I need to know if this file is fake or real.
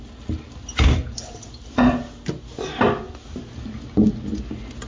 real